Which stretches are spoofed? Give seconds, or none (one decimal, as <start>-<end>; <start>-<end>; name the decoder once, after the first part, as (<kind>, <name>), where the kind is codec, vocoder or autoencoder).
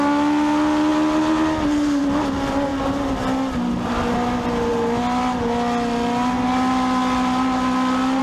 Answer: none